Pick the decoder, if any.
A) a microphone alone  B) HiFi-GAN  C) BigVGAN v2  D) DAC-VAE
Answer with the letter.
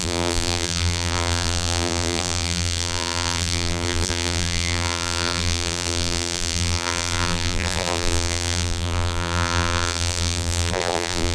C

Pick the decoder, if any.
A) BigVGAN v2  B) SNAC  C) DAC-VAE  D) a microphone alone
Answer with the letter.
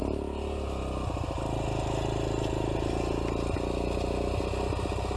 D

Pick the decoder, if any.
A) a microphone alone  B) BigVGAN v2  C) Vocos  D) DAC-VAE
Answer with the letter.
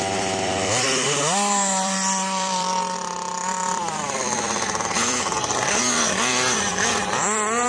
B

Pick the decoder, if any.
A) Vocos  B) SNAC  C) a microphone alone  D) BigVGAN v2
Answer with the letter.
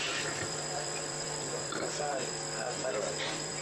D